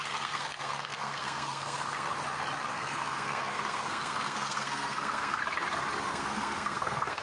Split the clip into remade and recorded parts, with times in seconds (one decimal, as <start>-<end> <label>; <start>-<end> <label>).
0.0-2.1 remade; 2.1-2.7 recorded; 2.7-5.4 remade; 5.4-6.1 recorded; 6.1-7.2 remade